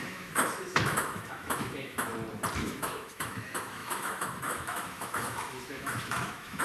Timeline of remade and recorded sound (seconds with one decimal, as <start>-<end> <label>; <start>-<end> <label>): 0.0-2.1 remade; 2.1-2.6 recorded; 2.6-6.6 remade